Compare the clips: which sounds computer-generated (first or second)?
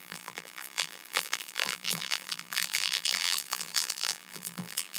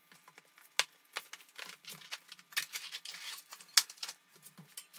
first